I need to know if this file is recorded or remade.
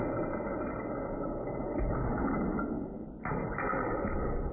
recorded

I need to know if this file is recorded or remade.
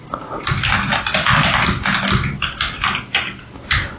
recorded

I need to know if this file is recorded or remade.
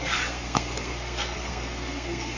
remade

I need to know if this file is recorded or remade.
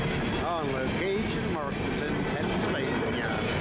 recorded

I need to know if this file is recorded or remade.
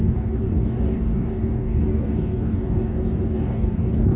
remade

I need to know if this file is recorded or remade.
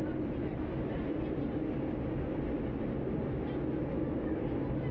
recorded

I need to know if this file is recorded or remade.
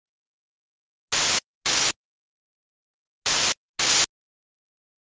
recorded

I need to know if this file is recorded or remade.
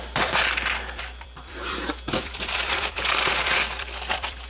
remade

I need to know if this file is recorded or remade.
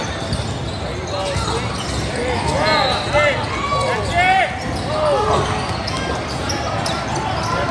recorded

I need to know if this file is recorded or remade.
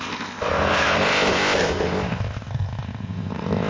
remade